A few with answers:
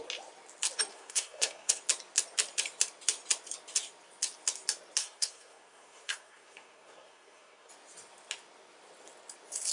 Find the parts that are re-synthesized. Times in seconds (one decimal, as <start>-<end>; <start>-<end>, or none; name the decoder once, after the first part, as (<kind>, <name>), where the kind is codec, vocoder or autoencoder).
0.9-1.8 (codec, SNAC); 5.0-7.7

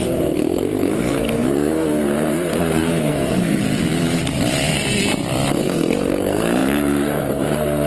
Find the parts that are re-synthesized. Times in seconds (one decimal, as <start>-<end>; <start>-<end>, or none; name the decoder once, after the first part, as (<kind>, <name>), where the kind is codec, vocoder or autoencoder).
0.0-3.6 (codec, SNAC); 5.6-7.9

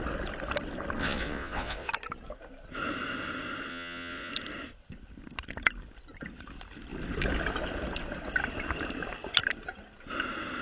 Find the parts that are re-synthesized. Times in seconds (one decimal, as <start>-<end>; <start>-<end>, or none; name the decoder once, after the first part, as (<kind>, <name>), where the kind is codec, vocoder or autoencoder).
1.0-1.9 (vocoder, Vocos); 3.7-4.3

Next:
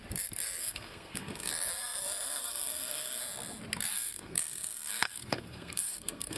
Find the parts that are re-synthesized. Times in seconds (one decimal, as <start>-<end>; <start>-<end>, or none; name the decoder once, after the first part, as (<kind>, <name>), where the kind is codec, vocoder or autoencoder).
0.6-1.5 (codec, SNAC); 2.4-3.2; 3.9-6.4

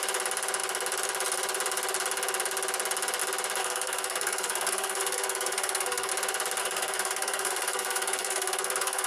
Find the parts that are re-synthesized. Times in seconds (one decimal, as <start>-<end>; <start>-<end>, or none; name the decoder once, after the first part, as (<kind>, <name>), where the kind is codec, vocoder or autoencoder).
3.6-6.1 (codec, SNAC); 6.6-9.1

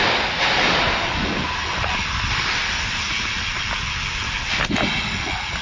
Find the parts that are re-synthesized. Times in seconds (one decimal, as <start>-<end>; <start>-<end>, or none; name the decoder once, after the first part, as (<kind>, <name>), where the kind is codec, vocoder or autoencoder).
none